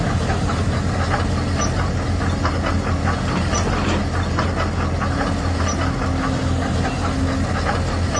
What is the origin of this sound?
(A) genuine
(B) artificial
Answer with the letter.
A